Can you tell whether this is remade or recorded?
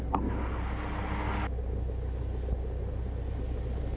recorded